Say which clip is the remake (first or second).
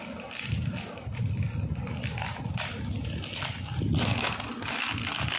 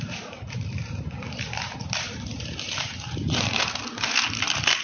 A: second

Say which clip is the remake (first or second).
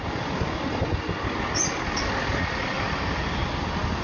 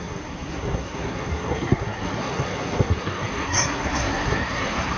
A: second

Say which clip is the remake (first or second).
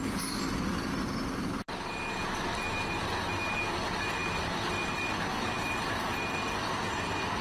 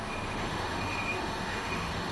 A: second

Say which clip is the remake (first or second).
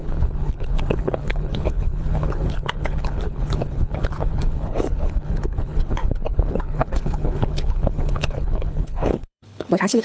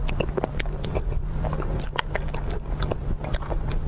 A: first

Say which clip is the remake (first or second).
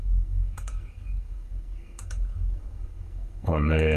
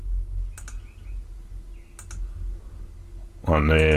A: first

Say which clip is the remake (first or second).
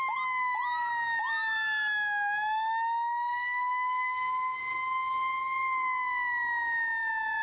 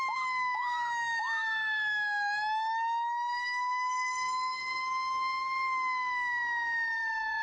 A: second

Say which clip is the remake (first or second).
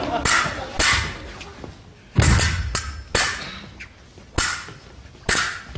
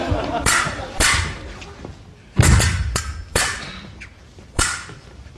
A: second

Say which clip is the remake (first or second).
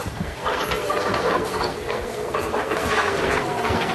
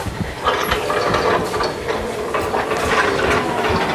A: first